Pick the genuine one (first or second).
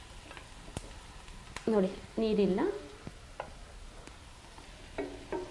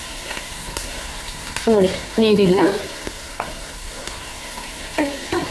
first